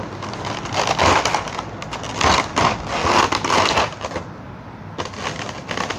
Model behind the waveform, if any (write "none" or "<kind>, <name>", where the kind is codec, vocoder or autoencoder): none